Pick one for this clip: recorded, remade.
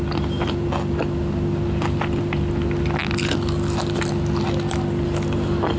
recorded